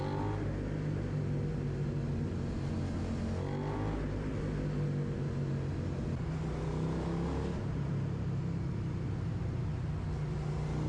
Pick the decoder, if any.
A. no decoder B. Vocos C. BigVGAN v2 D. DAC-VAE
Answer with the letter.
A